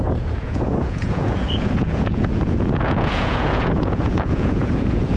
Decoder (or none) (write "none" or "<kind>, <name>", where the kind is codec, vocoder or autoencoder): vocoder, Vocos